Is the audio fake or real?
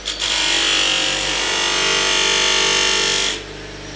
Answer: real